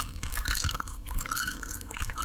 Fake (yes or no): yes